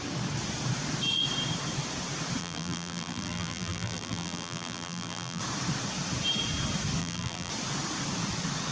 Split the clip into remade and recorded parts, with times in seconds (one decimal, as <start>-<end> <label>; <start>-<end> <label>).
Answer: 0.0-2.4 recorded; 2.4-5.4 remade; 5.4-7.0 recorded; 7.0-7.5 remade; 7.5-8.7 recorded